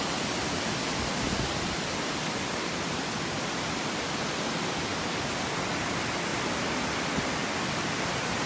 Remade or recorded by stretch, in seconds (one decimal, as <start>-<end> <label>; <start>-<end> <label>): 0.0-8.5 recorded